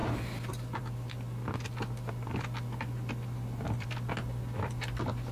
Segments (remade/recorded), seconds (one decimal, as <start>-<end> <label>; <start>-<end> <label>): 0.0-5.3 recorded